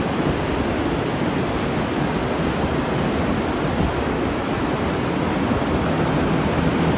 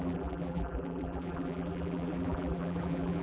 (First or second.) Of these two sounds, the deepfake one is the second